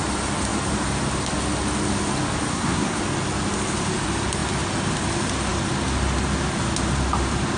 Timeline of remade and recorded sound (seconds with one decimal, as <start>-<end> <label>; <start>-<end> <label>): 0.0-2.5 recorded; 2.5-3.0 remade; 3.0-7.6 recorded